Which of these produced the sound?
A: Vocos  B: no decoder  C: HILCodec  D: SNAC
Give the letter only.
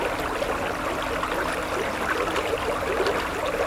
B